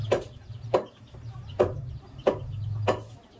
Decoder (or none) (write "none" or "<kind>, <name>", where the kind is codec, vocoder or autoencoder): vocoder, BigVGAN v2